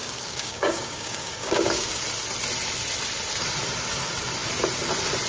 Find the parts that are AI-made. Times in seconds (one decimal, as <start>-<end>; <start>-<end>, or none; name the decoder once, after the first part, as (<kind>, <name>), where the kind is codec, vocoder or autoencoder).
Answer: 0.0-2.0 (codec, DAC)